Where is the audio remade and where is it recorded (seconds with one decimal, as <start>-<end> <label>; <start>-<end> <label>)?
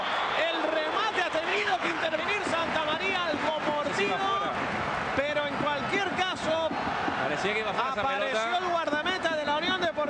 0.0-1.5 recorded; 1.5-2.2 remade; 2.2-10.1 recorded